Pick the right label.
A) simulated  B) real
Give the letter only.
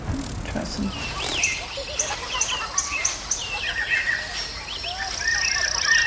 B